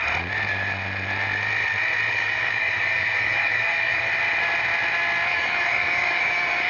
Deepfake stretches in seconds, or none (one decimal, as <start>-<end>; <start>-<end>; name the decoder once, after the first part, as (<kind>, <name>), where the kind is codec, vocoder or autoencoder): 2.1-4.1 (codec, DAC); 5.3-6.7